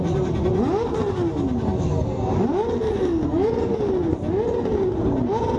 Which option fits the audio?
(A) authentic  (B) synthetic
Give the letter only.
A